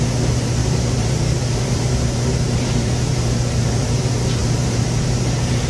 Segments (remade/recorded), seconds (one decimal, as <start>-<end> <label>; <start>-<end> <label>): 0.0-0.6 recorded; 0.6-4.0 remade; 4.0-4.4 recorded; 4.4-5.7 remade